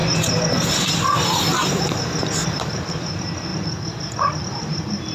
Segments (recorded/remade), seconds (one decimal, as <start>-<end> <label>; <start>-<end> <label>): 0.0-2.6 recorded; 2.6-5.1 remade